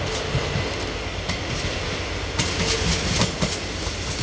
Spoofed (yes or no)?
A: no